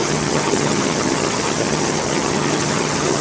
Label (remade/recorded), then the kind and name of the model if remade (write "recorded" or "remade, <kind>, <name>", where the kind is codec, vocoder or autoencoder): remade, vocoder, HiFi-GAN